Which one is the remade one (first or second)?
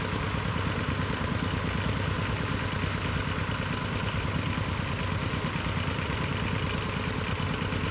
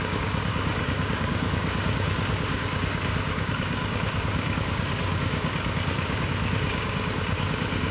second